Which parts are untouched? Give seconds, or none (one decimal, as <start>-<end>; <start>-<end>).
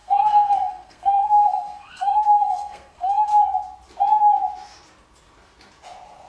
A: 3.3-6.3